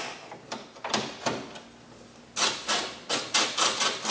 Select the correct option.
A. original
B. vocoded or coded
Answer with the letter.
B